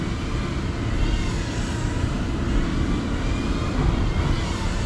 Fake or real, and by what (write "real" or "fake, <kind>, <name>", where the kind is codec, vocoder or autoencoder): real